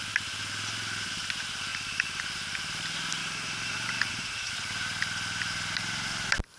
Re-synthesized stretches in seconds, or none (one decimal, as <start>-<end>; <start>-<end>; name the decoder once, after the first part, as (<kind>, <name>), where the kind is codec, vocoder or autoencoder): 1.7-2.2 (vocoder, BigVGAN v2); 3.2-4.5

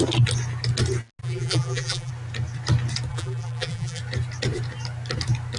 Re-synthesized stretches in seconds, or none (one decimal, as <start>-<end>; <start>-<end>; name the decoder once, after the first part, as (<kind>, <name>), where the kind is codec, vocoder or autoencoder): 1.2-2.1 (vocoder, BigVGAN v2); 3.1-4.0

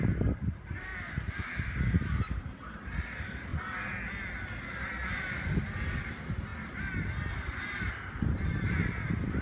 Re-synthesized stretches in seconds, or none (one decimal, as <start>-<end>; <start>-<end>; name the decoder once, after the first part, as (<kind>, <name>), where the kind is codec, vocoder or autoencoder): 0.0-0.9 (vocoder, BigVGAN v2); 2.4-3.5; 6.1-6.5; 7.8-9.4

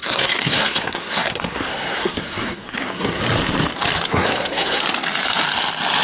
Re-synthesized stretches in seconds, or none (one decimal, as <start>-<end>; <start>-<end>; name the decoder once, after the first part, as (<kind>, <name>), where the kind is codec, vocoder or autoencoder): 0.0-3.2 (codec, SNAC); 4.1-4.8

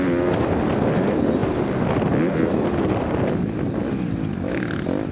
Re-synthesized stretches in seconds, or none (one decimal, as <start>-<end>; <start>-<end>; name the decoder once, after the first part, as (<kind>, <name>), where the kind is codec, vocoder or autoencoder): none

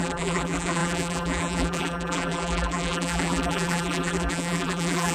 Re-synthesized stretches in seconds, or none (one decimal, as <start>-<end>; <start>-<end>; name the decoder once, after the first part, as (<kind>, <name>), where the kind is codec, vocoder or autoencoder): 0.0-5.1 (vocoder, BigVGAN v2)